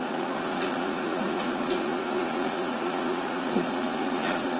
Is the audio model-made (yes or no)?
yes